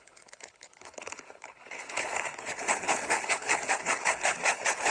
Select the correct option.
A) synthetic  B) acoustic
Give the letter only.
A